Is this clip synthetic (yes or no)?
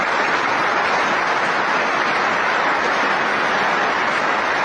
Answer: no